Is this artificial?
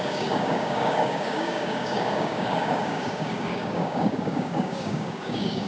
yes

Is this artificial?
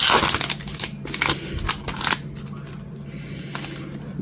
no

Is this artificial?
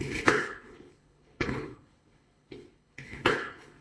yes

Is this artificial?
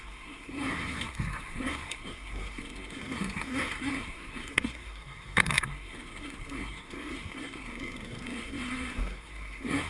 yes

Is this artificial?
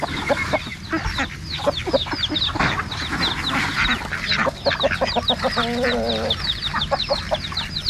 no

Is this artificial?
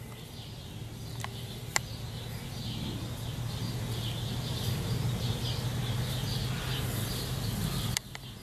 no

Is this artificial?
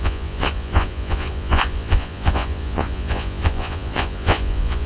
yes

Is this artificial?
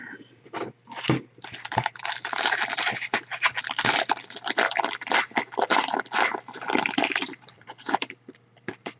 yes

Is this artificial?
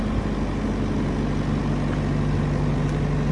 no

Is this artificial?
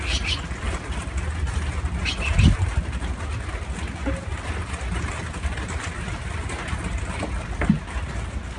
no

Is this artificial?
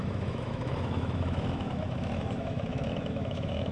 yes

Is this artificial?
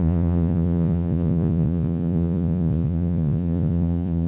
yes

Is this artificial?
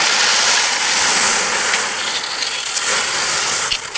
no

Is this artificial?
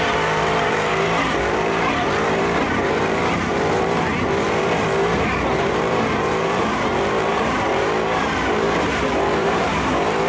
yes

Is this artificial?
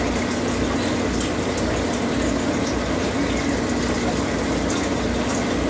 no